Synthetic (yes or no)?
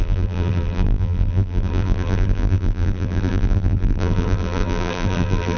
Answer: yes